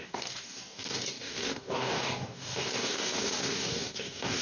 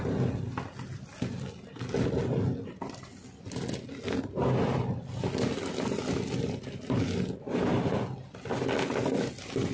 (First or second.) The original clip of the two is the second